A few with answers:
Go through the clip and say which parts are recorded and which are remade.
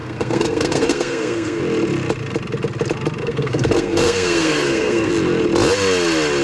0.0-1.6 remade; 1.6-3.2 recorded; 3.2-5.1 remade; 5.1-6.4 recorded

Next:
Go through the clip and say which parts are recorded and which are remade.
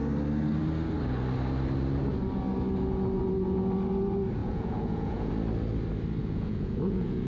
0.0-4.4 recorded; 4.4-5.3 remade; 5.3-6.2 recorded; 6.2-7.3 remade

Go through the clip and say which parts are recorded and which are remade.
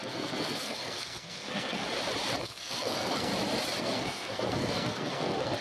0.0-1.8 remade; 1.8-2.4 recorded; 2.4-3.3 remade; 3.3-3.8 recorded; 3.8-5.6 remade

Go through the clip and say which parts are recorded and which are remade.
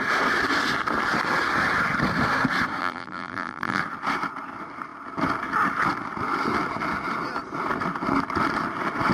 0.0-2.8 recorded; 2.8-3.8 remade; 3.8-9.1 recorded